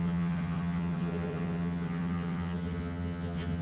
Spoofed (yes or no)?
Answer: yes